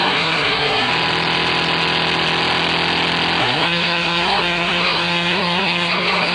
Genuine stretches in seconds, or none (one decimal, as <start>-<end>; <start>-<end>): 0.9-3.4